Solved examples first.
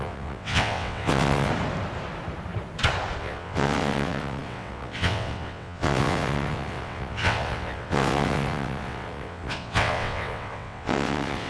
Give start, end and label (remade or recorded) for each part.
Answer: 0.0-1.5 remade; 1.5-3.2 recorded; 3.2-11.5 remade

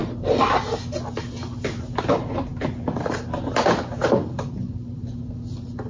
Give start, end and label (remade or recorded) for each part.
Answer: 0.0-5.9 recorded